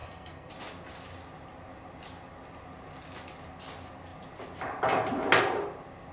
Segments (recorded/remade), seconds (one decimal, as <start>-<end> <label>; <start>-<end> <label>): 0.0-0.5 remade; 0.5-6.1 recorded